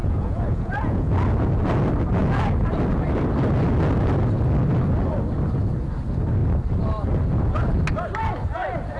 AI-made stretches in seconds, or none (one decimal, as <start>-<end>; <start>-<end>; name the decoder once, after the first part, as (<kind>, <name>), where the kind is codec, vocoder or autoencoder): 0.0-1.1 (vocoder, Vocos)